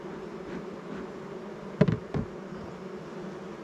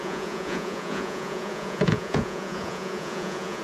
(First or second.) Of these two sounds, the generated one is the second